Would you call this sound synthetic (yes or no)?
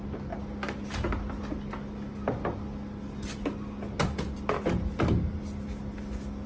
no